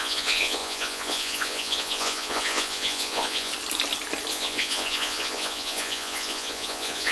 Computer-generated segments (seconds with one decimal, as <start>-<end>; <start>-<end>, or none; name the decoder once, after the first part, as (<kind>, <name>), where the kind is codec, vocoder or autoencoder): 0.0-3.5 (vocoder, Vocos); 4.3-7.1